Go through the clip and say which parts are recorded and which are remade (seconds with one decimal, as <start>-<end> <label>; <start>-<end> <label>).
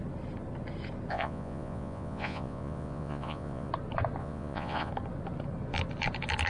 0.0-1.1 recorded; 1.1-3.7 remade; 3.7-4.2 recorded; 4.2-4.9 remade; 4.9-6.5 recorded